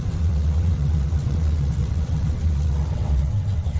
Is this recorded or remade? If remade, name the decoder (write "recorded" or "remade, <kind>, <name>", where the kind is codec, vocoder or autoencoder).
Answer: remade, vocoder, WaveNeXt